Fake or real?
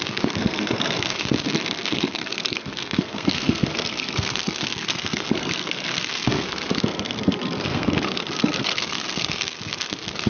fake